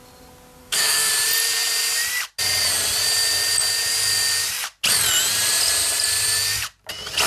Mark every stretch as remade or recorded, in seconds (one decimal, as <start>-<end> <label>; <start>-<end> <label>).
0.0-0.6 recorded; 0.6-1.1 remade; 1.1-7.3 recorded